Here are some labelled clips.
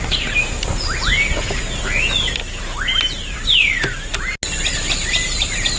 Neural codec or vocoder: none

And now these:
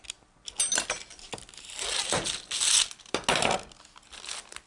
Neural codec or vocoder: none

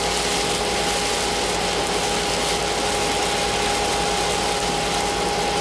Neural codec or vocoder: none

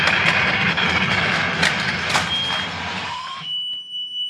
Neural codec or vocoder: none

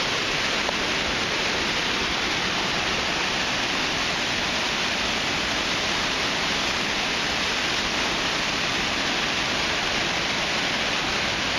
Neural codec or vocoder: none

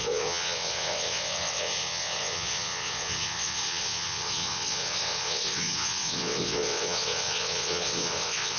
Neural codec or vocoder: vocoder, WaveNeXt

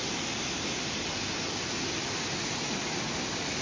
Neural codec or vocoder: none